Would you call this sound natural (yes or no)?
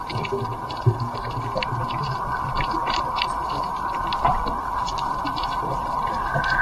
no